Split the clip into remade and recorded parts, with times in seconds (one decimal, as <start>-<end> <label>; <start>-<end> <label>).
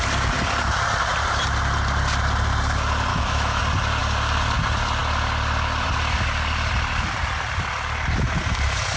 0.0-3.1 recorded; 3.1-3.6 remade; 3.6-9.0 recorded